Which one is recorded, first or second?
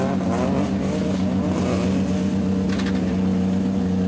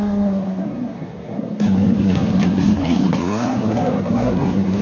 first